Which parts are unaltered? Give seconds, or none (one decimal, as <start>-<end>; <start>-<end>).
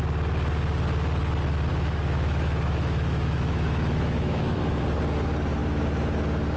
0.0-1.7; 4.8-6.6